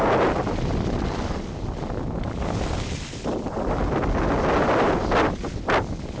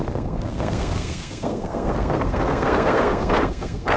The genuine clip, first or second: first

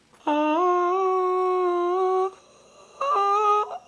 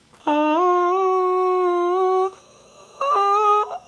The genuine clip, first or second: first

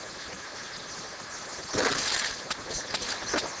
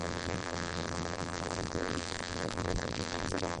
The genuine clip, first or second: first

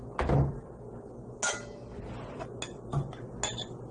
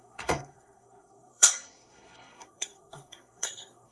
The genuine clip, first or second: first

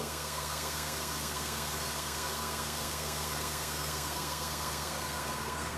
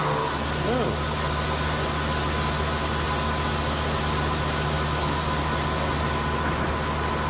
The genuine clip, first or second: second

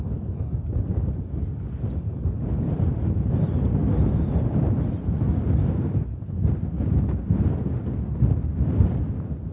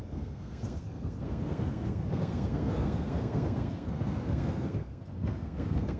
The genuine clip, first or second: first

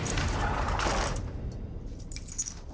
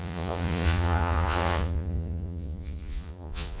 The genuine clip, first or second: first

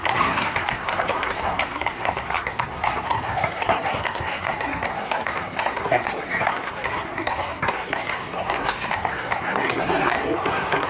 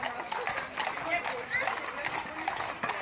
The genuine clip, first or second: second